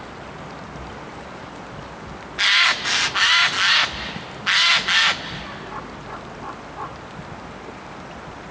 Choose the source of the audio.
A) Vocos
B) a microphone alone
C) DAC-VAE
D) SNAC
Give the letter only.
B